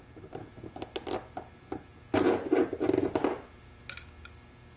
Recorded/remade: recorded